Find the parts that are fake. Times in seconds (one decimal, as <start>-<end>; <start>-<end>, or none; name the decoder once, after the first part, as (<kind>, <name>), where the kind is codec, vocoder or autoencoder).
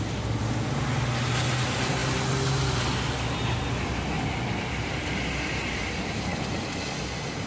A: none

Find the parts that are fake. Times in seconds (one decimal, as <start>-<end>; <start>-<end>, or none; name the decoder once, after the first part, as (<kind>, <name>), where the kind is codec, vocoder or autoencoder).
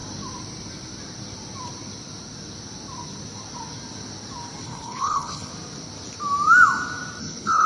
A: 4.6-5.5 (codec, HILCodec); 7.2-7.7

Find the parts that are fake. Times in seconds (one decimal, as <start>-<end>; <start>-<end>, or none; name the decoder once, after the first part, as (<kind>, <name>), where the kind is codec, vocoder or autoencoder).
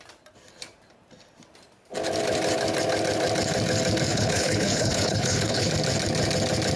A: 4.1-5.7 (codec, HILCodec)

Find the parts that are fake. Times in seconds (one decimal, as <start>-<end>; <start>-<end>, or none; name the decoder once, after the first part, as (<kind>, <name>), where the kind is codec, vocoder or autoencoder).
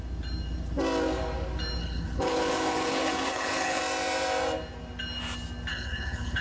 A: 1.8-3.8 (codec, HILCodec); 5.7-6.4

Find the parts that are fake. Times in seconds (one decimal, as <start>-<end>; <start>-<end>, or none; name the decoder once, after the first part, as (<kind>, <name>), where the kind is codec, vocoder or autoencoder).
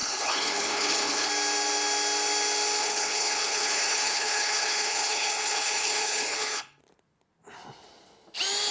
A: 0.0-1.3 (codec, HILCodec); 2.8-6.8